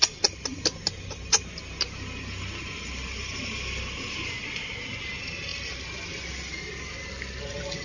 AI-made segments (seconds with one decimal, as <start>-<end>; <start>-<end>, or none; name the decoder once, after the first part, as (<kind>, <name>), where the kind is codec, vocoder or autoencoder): none